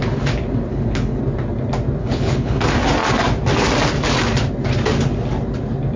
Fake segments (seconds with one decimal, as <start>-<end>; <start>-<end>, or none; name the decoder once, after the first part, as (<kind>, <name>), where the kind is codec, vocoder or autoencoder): 0.7-1.2 (codec, HILCodec); 2.0-2.6